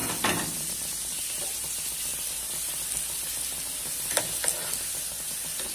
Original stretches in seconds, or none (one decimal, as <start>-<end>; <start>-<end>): 0.0-5.7